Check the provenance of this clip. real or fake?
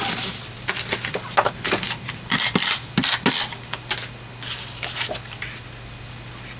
real